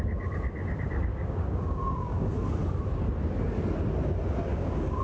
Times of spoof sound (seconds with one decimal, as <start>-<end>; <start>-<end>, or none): 1.1-2.3; 4.5-5.0